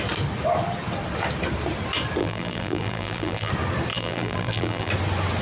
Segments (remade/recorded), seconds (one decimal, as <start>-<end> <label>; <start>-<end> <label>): 0.0-2.2 recorded; 2.2-3.5 remade; 3.5-3.9 recorded; 3.9-4.9 remade; 4.9-5.4 recorded